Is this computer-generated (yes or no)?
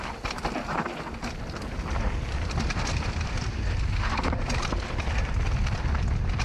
no